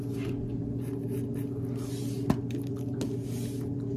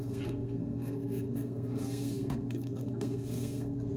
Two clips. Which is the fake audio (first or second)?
second